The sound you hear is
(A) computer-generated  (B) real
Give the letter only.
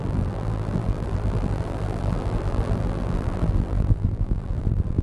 A